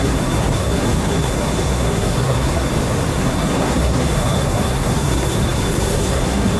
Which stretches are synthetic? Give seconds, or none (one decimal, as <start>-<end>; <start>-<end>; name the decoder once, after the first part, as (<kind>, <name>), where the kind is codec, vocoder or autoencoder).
0.0-2.7 (codec, SNAC); 3.2-6.6